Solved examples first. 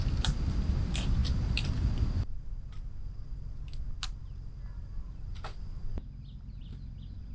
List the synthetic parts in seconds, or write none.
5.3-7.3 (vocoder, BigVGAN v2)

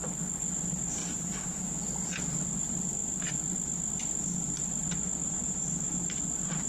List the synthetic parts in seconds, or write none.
1.0-1.6 (vocoder, BigVGAN v2); 5.3-6.2

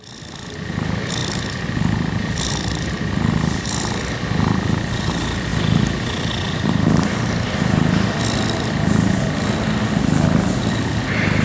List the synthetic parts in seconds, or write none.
1.2-3.6 (vocoder, BigVGAN v2)

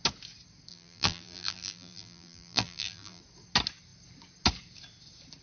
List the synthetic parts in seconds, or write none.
0.7-3.2 (vocoder, BigVGAN v2)

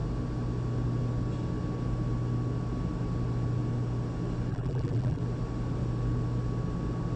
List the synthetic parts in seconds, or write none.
4.5-5.2 (vocoder, BigVGAN v2)

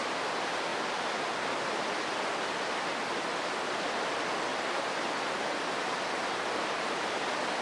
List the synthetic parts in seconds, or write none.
none